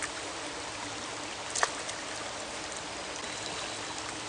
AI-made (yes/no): no